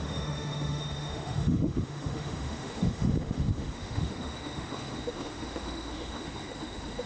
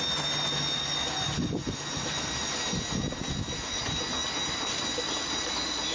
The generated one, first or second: first